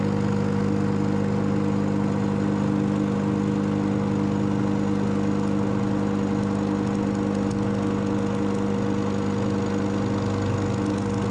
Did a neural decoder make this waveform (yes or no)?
no